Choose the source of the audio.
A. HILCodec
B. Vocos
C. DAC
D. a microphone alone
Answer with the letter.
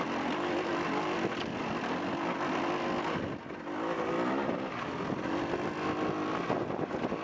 D